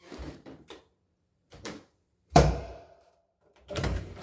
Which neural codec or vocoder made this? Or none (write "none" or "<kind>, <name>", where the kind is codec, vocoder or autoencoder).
vocoder, BigVGAN v2